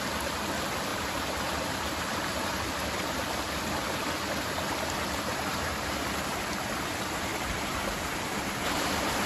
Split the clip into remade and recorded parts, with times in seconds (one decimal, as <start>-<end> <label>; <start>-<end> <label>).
0.0-0.9 recorded; 0.9-3.4 remade; 3.4-5.5 recorded; 5.5-6.6 remade; 6.6-7.3 recorded; 7.3-8.9 remade; 8.9-9.3 recorded